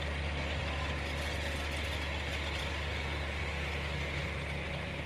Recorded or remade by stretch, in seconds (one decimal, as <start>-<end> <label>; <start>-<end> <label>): 0.0-5.1 recorded